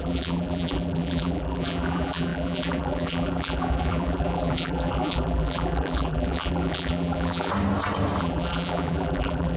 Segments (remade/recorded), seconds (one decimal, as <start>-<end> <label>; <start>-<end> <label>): 0.0-7.5 remade; 7.5-8.2 recorded; 8.2-9.6 remade

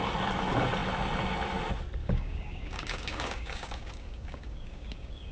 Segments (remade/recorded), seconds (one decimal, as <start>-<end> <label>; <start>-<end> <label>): 0.0-2.0 recorded; 2.0-5.3 remade

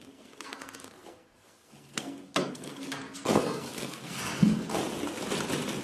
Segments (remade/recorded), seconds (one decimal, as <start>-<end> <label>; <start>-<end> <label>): 0.0-4.7 remade; 4.7-5.8 recorded

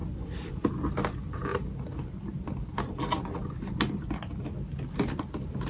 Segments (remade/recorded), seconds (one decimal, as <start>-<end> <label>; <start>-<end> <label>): 0.0-5.7 recorded

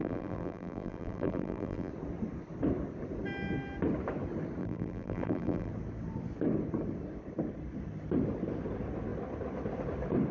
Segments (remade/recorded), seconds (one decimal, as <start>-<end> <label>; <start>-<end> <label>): 0.0-1.9 remade; 1.9-4.6 recorded; 4.6-5.7 remade; 5.7-10.3 recorded